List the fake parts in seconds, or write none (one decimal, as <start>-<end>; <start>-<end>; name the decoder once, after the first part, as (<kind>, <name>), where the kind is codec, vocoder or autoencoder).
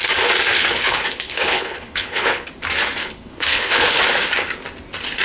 0.5-2.5 (codec, HILCodec); 3.0-4.0